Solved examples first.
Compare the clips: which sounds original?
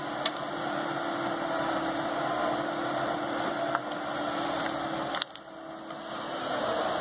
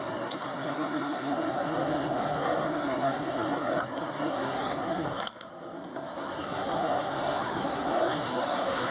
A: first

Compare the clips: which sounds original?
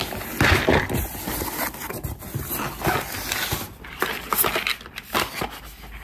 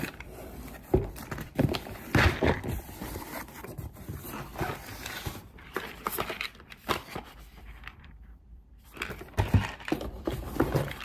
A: first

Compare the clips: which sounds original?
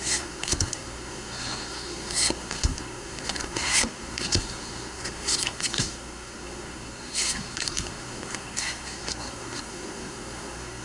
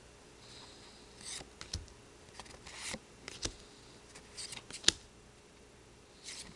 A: second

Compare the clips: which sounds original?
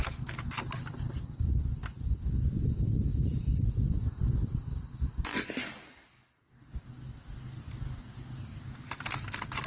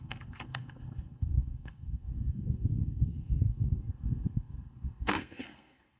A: first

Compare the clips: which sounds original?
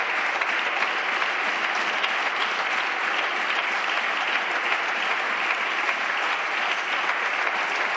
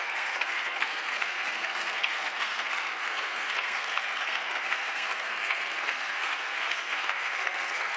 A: first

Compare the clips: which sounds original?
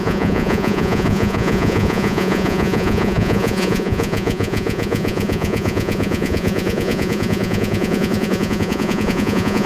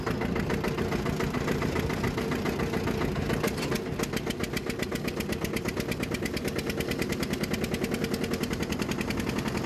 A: second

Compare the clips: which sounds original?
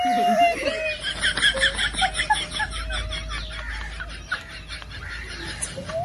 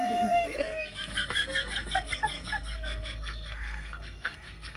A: first